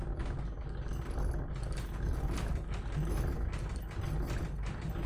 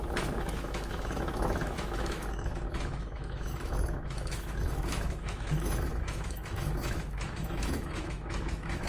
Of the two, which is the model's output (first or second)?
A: second